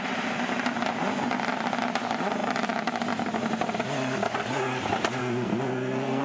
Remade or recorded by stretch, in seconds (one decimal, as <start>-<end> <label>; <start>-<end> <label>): 0.0-5.2 recorded; 5.2-6.2 remade